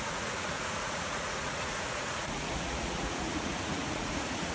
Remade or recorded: remade